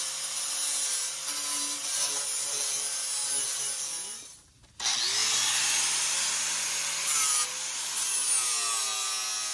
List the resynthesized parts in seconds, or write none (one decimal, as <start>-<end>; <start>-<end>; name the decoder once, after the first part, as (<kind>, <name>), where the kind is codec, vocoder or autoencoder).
none